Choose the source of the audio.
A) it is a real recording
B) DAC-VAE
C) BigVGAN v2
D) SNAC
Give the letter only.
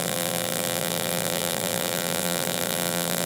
C